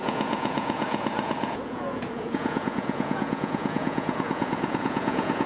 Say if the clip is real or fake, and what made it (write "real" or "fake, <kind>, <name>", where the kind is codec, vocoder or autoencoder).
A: fake, vocoder, Vocos